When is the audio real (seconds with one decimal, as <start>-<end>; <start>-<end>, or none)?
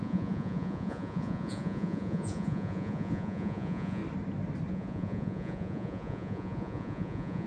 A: 4.0-4.7